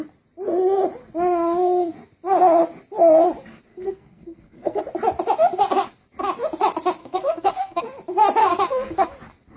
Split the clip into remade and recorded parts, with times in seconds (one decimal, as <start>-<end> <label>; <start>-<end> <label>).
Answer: 0.0-3.7 recorded; 3.7-4.8 remade; 4.8-7.0 recorded; 7.0-7.8 remade; 7.8-8.4 recorded; 8.4-9.1 remade; 9.1-9.6 recorded